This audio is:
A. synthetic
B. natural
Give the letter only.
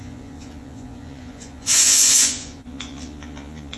A